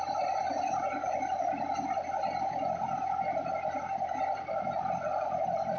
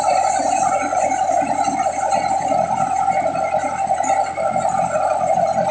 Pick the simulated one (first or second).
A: first